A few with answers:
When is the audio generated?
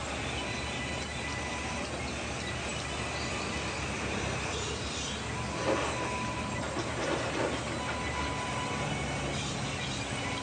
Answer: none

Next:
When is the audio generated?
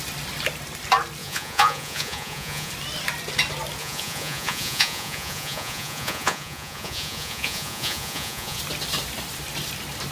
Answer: 1.2-2.7; 3.8-8.6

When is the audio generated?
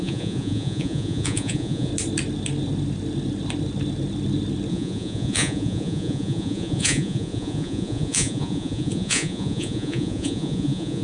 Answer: 0.0-1.9; 4.7-11.0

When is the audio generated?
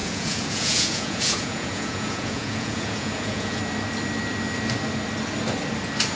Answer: 0.0-3.6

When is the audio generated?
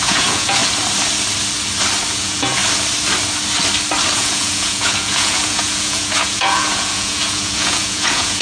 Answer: 0.0-0.6; 2.1-2.6; 4.2-8.4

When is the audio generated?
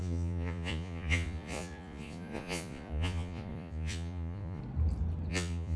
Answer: 0.0-4.6; 5.3-5.8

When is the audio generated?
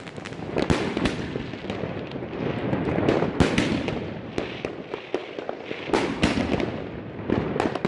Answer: none